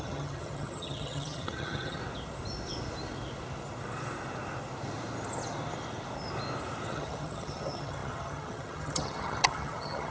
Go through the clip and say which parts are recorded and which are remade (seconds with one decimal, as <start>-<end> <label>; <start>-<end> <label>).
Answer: 0.0-2.0 remade; 2.0-6.9 recorded; 6.9-10.1 remade